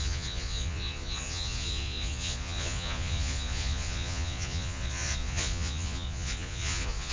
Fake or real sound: fake